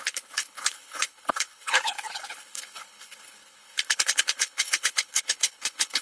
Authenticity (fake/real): fake